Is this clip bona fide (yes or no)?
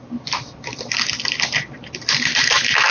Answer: yes